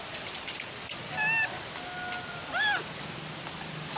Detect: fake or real real